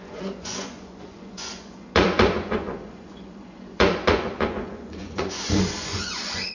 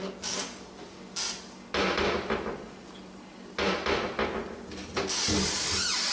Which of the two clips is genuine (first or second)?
second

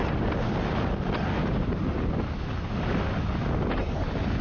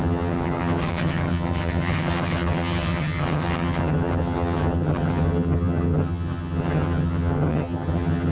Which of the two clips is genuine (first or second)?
first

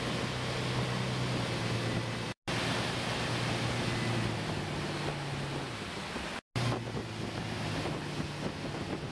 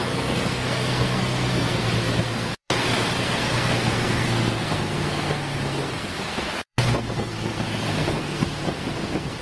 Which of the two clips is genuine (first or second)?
first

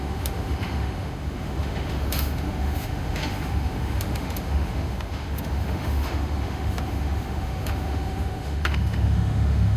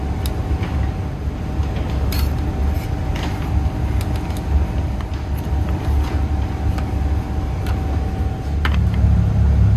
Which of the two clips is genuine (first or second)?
second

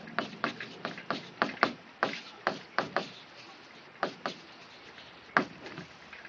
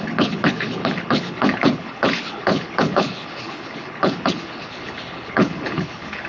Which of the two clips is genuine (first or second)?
first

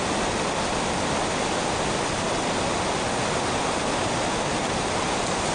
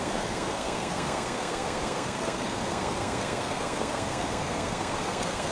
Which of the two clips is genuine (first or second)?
first